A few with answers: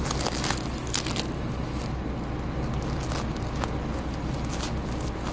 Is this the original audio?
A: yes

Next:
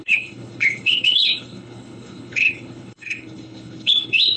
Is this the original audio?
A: no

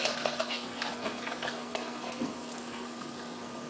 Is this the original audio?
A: no